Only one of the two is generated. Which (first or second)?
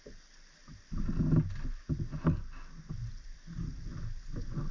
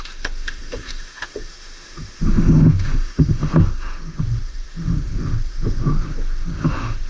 second